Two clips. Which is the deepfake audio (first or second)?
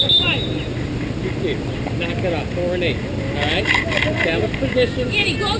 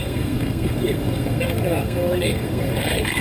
second